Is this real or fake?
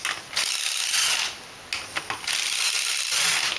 real